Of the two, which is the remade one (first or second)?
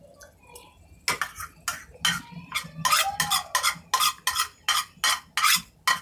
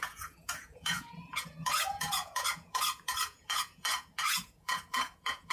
second